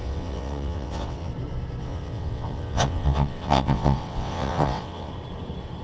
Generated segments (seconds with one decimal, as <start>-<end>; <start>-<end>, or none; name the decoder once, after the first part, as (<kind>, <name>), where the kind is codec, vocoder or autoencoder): 0.0-1.3 (vocoder, WaveNeXt); 1.8-5.1